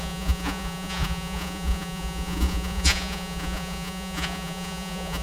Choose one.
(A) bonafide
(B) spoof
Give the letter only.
B